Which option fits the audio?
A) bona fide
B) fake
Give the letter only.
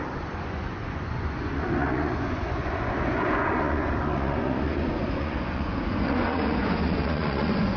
B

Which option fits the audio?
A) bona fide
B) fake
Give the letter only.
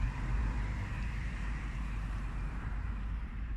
B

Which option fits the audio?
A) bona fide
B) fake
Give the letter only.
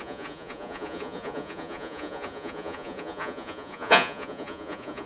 B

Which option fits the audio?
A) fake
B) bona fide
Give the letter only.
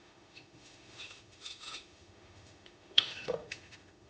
A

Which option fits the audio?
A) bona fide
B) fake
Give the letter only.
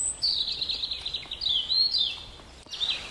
A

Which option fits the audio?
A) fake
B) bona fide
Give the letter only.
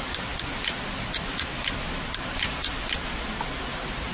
B